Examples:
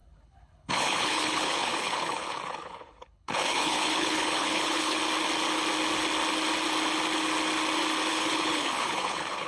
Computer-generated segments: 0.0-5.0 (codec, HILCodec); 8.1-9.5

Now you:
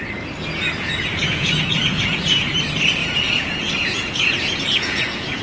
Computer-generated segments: 1.2-2.5 (vocoder, Vocos); 3.0-5.4

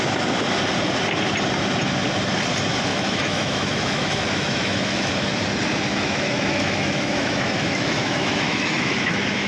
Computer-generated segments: 2.9-5.1 (autoencoder, DAC-VAE); 5.9-9.5

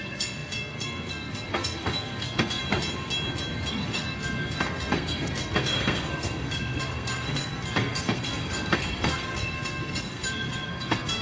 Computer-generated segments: 0.0-2.6 (codec, SNAC); 3.7-11.2